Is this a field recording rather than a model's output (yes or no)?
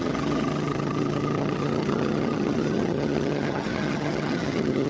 no